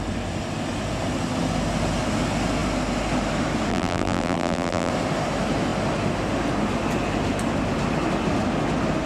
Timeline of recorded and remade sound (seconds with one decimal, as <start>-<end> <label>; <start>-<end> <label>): 0.0-3.7 recorded; 3.7-4.9 remade; 4.9-9.1 recorded